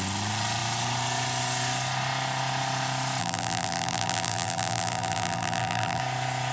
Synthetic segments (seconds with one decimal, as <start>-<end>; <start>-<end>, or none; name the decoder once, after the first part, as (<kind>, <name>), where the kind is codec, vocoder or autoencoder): 3.2-6.0 (vocoder, BigVGAN v2)